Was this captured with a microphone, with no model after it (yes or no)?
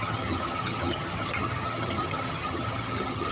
no